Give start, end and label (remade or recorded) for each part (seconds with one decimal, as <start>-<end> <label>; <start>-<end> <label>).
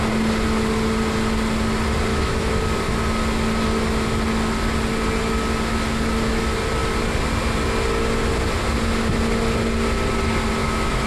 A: 0.0-2.1 recorded; 2.1-2.6 remade; 2.6-10.6 recorded; 10.6-11.1 remade